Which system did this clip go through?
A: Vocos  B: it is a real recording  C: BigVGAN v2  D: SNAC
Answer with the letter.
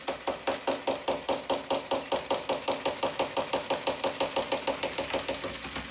B